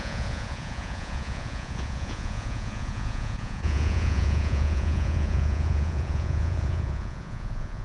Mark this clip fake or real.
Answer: fake